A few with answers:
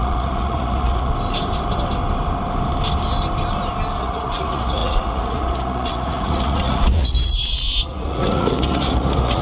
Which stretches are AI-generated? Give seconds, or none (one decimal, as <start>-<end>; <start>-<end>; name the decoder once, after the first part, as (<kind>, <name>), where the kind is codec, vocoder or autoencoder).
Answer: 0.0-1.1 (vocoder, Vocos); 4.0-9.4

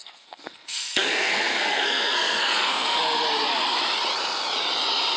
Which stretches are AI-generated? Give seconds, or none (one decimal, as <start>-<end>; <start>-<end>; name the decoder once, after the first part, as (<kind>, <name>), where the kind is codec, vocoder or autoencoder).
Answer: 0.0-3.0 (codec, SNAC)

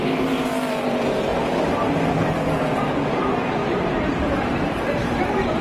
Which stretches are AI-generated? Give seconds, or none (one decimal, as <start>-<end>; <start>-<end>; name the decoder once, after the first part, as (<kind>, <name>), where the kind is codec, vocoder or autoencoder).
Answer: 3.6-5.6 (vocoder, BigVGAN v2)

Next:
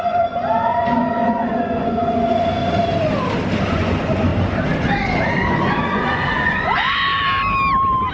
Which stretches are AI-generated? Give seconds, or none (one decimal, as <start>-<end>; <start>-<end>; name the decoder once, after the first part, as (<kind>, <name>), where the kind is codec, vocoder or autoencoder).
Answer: 0.0-2.6 (vocoder, Vocos); 3.7-4.3; 5.5-7.1

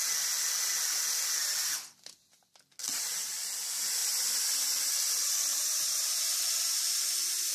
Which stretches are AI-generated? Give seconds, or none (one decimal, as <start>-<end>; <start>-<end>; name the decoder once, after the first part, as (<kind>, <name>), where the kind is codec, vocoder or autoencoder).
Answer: 2.8-3.3 (vocoder, BigVGAN v2); 5.5-7.5

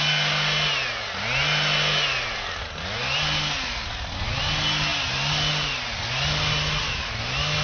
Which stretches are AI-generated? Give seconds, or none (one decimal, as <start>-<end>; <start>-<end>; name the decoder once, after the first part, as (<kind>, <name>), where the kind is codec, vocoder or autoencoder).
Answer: none

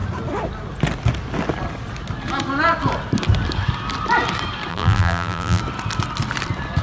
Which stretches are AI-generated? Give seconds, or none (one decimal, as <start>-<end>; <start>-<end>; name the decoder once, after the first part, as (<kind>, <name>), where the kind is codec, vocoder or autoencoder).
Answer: 4.7-5.6 (vocoder, BigVGAN v2)

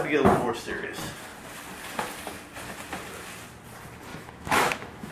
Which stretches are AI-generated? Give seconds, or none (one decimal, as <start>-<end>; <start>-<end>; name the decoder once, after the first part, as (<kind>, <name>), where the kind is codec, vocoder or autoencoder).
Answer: 4.1-5.1 (autoencoder, DAC-VAE)